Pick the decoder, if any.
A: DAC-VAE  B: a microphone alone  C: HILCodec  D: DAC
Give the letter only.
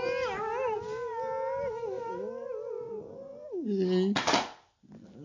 B